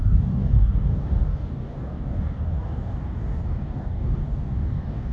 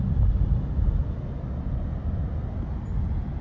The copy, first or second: first